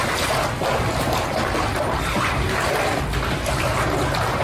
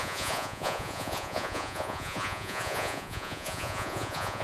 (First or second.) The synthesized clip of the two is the second